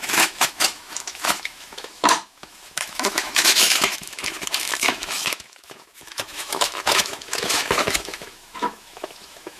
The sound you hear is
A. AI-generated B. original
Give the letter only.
A